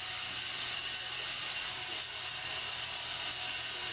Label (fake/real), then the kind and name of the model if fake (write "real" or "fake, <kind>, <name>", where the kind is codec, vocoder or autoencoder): real